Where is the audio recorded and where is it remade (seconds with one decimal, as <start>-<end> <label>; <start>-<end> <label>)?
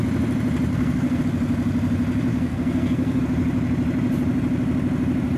0.0-0.7 recorded; 0.7-1.2 remade; 1.2-2.3 recorded; 2.3-3.2 remade; 3.2-5.4 recorded